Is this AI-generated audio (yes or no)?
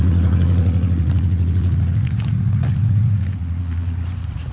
yes